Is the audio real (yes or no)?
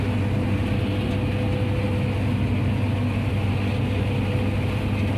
yes